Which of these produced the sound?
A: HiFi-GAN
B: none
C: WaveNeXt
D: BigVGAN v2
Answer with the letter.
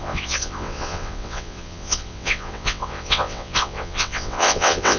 C